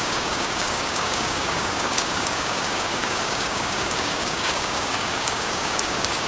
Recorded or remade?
remade